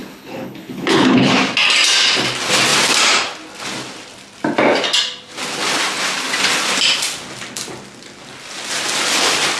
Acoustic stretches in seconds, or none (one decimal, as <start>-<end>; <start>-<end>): 1.3-9.6